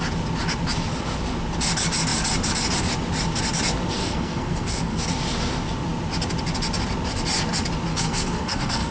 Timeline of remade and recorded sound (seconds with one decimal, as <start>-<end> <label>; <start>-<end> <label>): 0.0-4.0 recorded; 4.0-5.0 remade; 5.0-7.9 recorded; 7.9-8.9 remade